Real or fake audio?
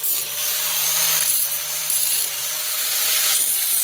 fake